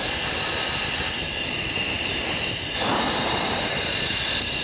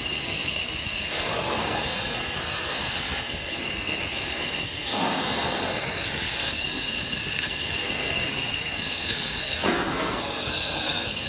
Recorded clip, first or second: first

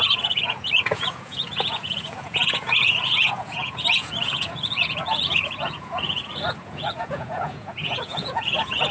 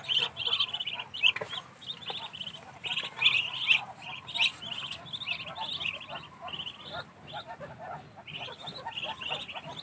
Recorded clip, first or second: second